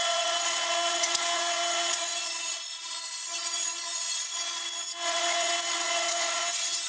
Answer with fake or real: fake